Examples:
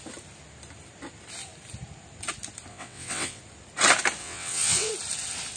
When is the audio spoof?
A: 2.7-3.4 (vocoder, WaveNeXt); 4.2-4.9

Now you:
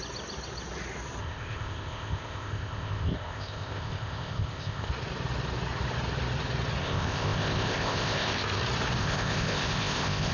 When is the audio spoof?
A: 1.2-4.9 (codec, ZipCodec); 6.8-8.6; 9.0-10.3

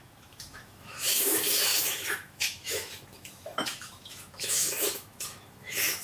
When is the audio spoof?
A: 0.0-6.0 (autoencoder, DAC-VAE)

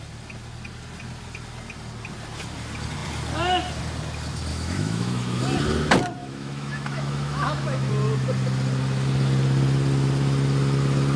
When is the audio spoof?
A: 4.5-5.4 (autoencoder, DAC-VAE); 6.2-7.9

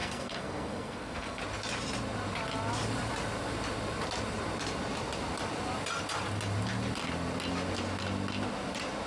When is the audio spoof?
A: 0.0-1.4 (codec, SNAC)